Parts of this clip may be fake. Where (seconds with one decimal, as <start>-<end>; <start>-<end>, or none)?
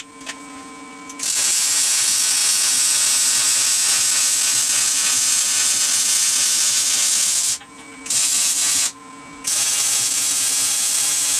none